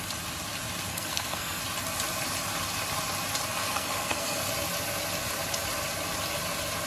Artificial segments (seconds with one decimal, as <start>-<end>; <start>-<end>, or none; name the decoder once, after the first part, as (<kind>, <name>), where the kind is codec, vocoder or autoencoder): 0.9-1.6 (codec, SNAC); 3.6-4.4